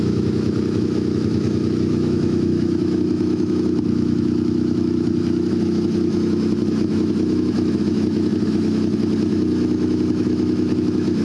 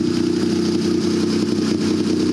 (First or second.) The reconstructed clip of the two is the first